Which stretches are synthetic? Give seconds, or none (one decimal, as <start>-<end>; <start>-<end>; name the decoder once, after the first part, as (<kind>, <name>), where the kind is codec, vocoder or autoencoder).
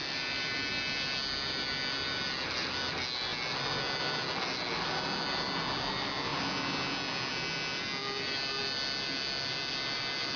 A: none